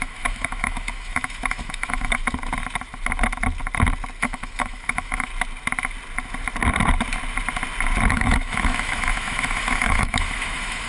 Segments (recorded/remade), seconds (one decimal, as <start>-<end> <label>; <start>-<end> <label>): 0.0-2.2 remade; 2.2-4.2 recorded; 4.2-5.3 remade; 5.3-8.1 recorded; 8.1-10.9 remade